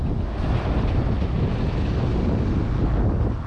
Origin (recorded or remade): recorded